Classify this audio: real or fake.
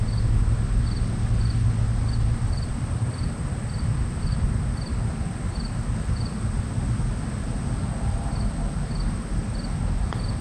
real